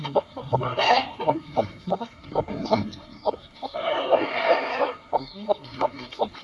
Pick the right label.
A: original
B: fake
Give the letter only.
B